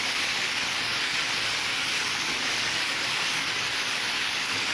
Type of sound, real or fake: fake